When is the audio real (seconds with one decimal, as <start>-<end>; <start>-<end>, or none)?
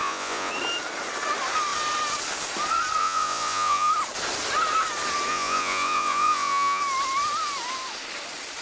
0.5-3.0; 3.9-5.3; 6.8-8.6